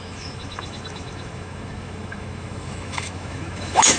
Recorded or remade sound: remade